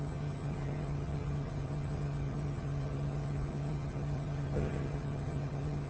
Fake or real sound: fake